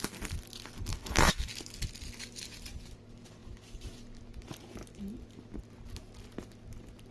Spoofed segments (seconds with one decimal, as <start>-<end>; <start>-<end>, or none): 0.9-1.5